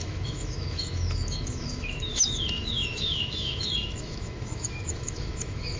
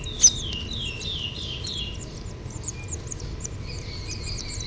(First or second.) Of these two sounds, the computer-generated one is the first